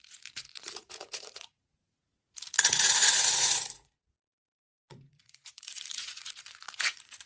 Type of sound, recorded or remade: remade